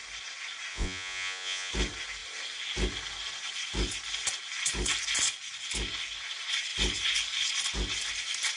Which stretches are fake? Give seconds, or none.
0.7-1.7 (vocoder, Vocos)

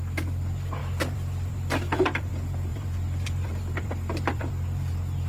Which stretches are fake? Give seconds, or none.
0.8-2.3 (vocoder, BigVGAN v2); 2.7-4.5

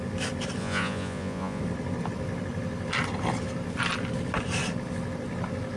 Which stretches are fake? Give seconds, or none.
0.6-1.6 (vocoder, Vocos)

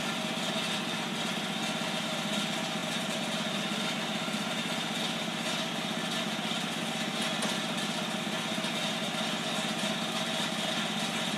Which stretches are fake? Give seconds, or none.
none

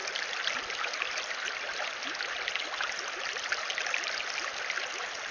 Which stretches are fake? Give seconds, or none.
none

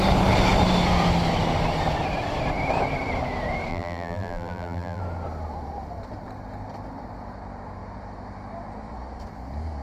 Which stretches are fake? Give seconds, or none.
3.7-5.0 (vocoder, BigVGAN v2)

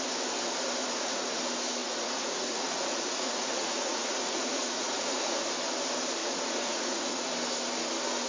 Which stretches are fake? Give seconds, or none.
0.8-1.4 (vocoder, Vocos); 1.8-5.4; 6.2-7.3

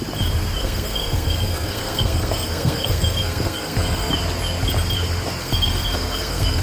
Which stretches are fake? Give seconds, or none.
0.6-4.1 (codec, SNAC); 5.4-6.6